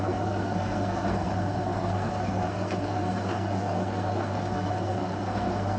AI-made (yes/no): yes